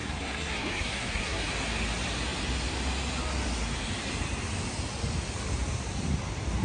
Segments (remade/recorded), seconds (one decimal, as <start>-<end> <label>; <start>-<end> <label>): 0.0-1.5 remade; 1.5-6.6 recorded